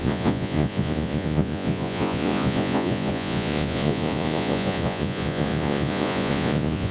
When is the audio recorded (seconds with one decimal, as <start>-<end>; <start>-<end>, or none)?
none